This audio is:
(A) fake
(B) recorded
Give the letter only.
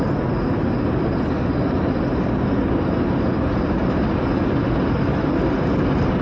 B